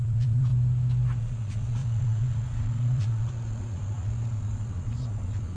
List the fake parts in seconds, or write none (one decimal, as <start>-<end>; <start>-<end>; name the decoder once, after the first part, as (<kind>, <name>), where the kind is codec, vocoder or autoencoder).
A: 0.0-0.5 (vocoder, Vocos); 1.2-5.6

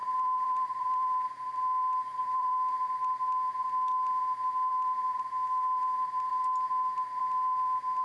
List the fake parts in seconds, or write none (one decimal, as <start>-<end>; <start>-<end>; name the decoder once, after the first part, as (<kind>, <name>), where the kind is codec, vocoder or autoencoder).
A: 0.0-1.3 (vocoder, BigVGAN v2); 2.1-2.8

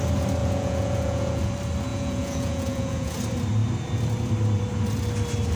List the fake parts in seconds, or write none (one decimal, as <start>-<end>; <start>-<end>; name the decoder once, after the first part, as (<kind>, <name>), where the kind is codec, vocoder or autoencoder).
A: 0.4-1.5 (vocoder, Vocos); 1.9-3.2

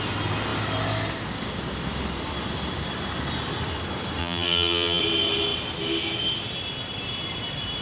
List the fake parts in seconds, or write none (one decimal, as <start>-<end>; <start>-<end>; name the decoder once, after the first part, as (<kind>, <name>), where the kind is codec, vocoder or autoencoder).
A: 4.2-5.0 (vocoder, BigVGAN v2)

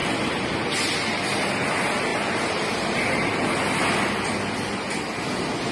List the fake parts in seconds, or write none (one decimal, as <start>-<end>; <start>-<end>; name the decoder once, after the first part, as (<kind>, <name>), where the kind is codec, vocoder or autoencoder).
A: 0.0-1.5 (vocoder, BigVGAN v2); 2.1-3.4